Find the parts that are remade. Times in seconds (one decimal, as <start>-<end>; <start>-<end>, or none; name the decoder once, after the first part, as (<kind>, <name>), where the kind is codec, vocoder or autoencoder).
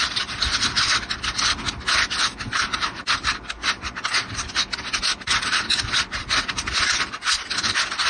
none